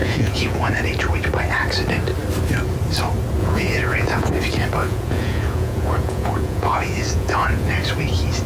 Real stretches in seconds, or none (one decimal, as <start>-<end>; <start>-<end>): 0.7-3.4; 4.3-4.8; 7.7-8.5